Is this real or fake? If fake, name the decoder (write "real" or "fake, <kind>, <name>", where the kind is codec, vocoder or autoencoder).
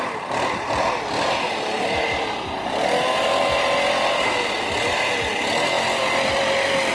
fake, vocoder, BigVGAN v2